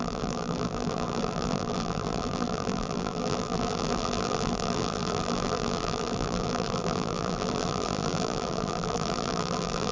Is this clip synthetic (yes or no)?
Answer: yes